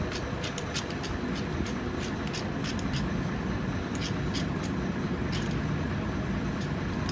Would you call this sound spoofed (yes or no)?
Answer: no